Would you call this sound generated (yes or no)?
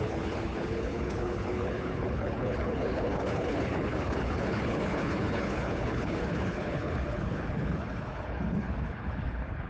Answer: yes